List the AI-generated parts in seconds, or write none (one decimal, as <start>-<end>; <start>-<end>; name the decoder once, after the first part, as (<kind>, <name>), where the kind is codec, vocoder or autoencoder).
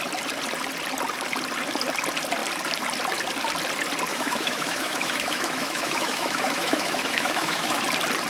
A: 4.1-7.8 (autoencoder, DAC-VAE)